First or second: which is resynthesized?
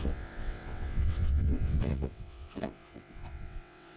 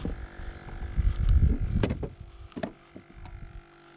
first